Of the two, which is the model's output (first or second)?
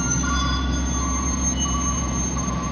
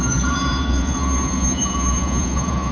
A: second